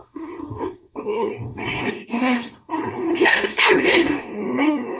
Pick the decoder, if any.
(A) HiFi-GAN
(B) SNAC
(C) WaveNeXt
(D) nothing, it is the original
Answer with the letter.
B